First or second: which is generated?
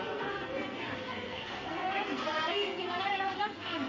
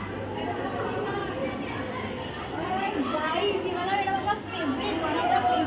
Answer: first